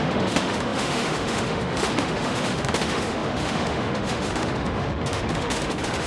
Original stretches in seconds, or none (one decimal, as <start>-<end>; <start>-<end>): none